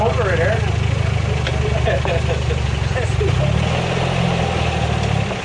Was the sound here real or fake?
real